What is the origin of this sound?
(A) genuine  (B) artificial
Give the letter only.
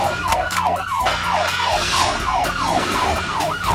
B